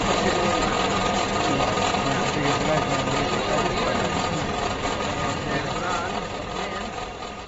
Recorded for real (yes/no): yes